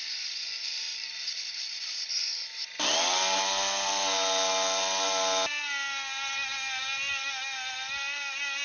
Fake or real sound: real